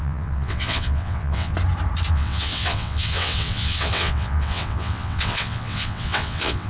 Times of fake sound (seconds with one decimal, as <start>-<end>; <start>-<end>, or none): 0.0-1.5; 2.1-6.7